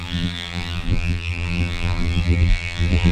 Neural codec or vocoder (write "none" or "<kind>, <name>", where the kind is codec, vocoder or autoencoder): vocoder, BigVGAN v2